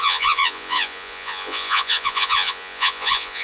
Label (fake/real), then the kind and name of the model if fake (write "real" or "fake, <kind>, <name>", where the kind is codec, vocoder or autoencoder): fake, vocoder, Vocos